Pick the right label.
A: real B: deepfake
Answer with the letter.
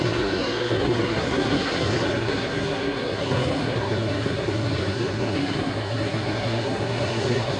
B